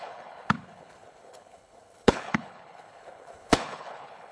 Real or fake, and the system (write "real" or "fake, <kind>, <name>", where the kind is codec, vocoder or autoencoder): fake, codec, HILCodec